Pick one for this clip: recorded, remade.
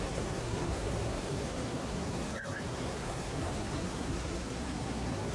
remade